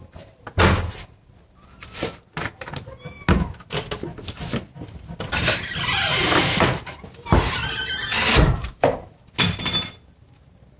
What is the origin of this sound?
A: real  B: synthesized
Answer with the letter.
A